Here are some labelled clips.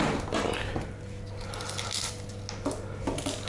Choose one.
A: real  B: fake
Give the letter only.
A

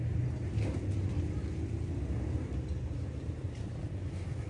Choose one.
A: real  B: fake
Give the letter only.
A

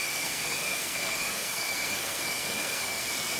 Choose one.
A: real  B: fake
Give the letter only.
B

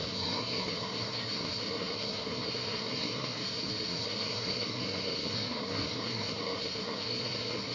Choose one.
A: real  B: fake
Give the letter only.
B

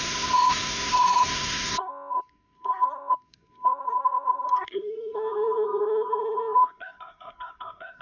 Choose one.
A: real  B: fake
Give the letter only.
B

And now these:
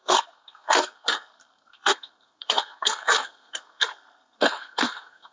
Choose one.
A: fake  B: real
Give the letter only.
A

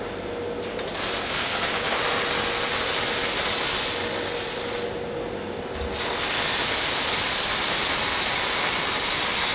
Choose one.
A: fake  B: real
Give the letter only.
B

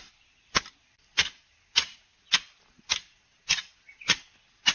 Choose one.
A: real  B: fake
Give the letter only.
A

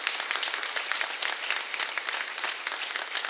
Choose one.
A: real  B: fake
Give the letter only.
A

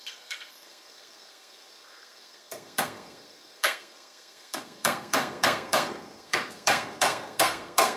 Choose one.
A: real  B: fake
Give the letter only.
B